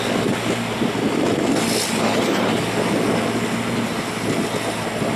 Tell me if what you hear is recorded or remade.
recorded